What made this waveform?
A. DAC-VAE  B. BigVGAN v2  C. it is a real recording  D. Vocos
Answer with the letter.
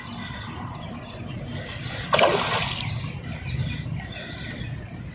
C